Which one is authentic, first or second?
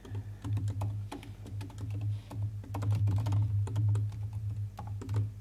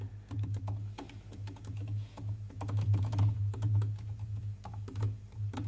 first